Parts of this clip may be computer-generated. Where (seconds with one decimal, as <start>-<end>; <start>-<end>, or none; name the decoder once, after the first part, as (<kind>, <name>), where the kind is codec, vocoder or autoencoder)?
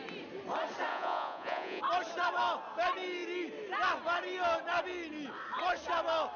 0.9-1.8 (vocoder, Vocos)